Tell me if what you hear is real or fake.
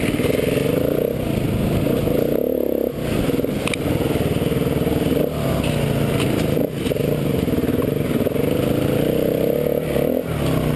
real